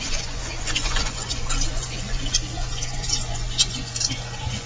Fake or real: fake